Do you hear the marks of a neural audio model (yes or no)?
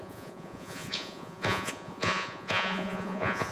yes